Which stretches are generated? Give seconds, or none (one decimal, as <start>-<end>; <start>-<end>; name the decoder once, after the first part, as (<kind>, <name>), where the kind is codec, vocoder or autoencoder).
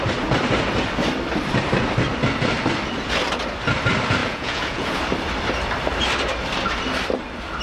4.2-5.0 (vocoder, Vocos)